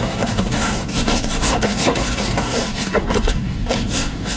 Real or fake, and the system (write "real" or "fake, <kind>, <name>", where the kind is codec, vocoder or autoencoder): fake, codec, SNAC